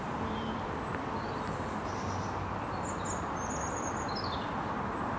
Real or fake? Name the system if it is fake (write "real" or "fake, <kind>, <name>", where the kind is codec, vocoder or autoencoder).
real